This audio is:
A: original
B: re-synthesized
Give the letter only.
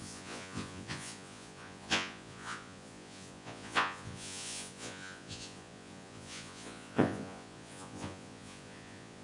B